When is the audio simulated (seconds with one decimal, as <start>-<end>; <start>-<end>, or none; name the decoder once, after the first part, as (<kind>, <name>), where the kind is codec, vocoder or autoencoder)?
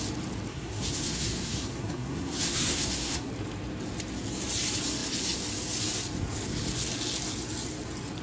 0.5-3.3 (codec, SNAC)